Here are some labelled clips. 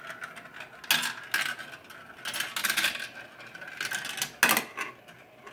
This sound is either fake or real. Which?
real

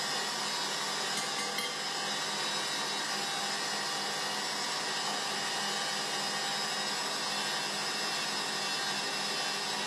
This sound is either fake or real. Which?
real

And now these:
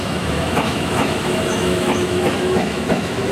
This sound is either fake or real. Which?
fake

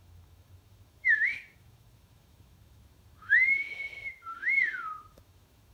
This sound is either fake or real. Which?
fake